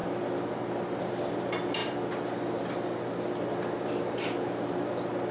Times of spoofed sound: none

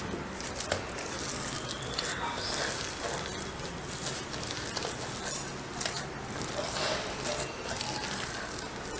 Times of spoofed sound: none

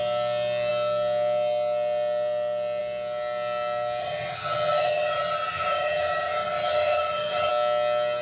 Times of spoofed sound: 4.0-7.5 (vocoder, HiFi-GAN)

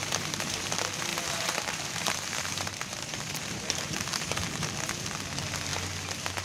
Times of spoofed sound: 1.1-4.7 (vocoder, BigVGAN v2)